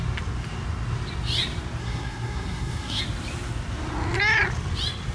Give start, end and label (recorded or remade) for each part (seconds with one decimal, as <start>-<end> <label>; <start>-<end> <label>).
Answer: 0.0-1.8 recorded; 1.8-3.0 remade; 3.0-5.1 recorded